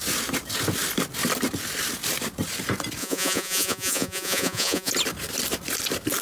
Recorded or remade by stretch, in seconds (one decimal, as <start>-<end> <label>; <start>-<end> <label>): 0.0-3.0 recorded; 3.0-4.9 remade; 4.9-6.2 recorded